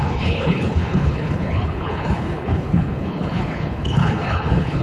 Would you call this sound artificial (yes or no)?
yes